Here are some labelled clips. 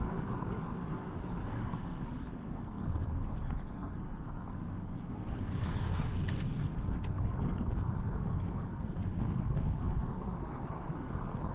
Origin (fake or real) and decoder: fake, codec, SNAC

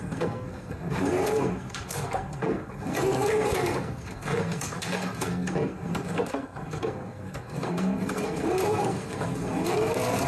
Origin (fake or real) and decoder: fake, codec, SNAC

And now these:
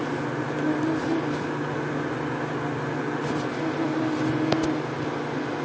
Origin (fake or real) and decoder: real